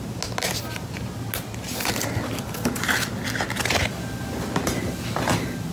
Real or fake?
real